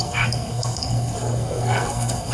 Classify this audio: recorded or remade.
remade